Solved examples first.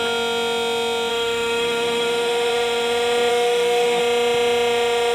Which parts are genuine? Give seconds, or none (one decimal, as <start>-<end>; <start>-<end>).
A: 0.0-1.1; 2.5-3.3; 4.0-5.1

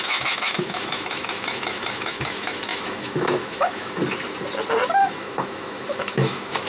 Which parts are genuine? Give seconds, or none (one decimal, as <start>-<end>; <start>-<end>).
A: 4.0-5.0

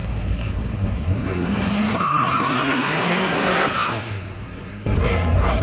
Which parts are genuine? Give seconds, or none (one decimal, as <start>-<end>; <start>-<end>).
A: none